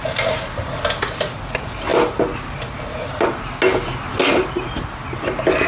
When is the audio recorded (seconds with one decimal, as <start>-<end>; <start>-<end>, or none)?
0.0-5.7

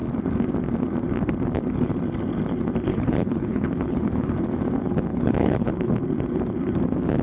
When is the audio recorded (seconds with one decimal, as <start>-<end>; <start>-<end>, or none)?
0.0-2.9; 4.3-5.1; 5.7-7.2

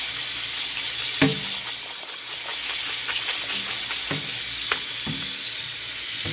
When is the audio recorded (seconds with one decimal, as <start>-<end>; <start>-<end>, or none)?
0.0-6.3

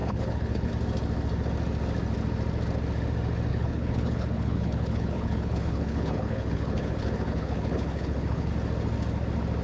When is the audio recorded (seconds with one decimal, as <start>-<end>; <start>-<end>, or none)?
0.7-3.5; 8.5-9.6

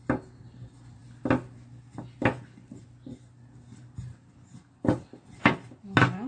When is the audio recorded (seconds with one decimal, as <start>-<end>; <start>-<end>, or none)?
0.0-6.3

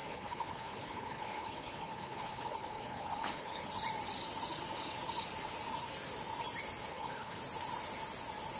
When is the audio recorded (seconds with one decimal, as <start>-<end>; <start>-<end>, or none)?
3.7-6.9; 7.4-8.6

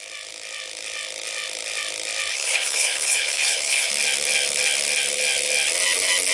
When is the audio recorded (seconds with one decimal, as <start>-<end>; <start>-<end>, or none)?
0.0-2.3; 3.9-6.3